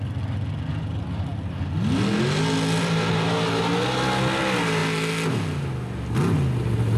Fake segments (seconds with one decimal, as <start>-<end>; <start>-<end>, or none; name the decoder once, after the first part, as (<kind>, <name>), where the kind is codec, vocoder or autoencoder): none